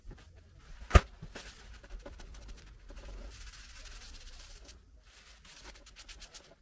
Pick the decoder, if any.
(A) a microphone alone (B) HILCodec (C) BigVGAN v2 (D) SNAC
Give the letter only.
A